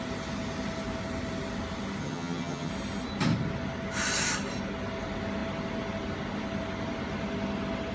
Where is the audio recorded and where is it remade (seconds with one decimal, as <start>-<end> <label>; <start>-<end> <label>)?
0.0-2.0 recorded; 2.0-2.7 remade; 2.7-7.9 recorded